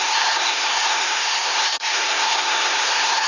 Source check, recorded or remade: remade